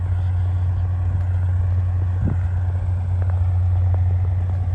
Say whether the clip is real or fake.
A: real